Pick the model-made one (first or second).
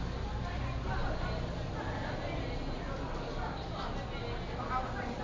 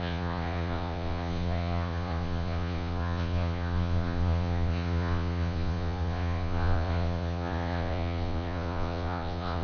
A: second